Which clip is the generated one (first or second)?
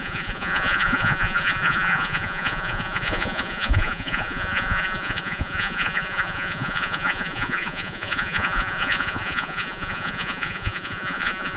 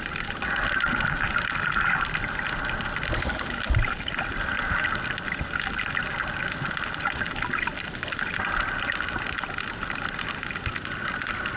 first